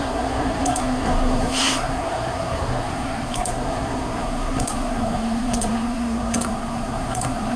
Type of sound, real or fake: fake